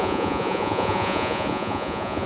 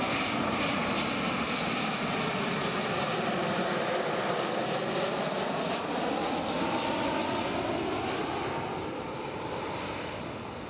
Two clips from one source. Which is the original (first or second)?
second